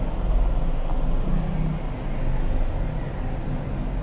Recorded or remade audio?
recorded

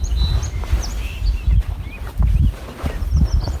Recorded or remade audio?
recorded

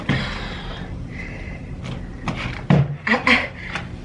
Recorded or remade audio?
remade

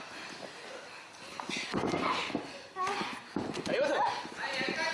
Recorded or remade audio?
recorded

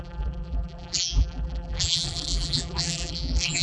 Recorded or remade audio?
remade